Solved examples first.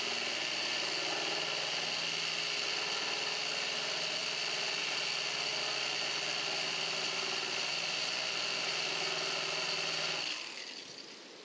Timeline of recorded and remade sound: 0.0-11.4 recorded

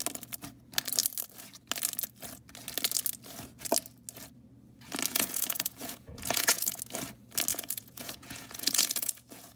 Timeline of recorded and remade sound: 0.0-5.1 recorded; 5.1-6.8 remade; 6.8-7.5 recorded; 7.5-9.6 remade

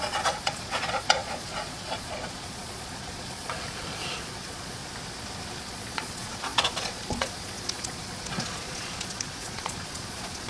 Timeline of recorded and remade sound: 0.0-4.8 remade; 4.8-5.6 recorded; 5.6-10.5 remade

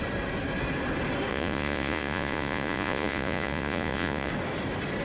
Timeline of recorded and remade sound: 0.0-1.3 recorded; 1.3-4.3 remade; 4.3-5.0 recorded

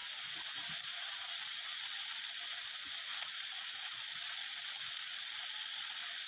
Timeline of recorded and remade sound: 0.0-1.3 recorded; 1.3-2.4 remade; 2.4-3.1 recorded; 3.1-6.3 remade

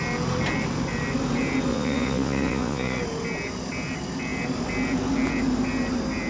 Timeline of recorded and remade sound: 0.0-1.7 recorded; 1.7-3.0 remade; 3.0-6.3 recorded

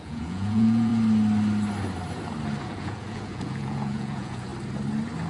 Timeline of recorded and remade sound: 0.0-0.9 remade; 0.9-2.6 recorded; 2.6-4.5 remade; 4.5-5.3 recorded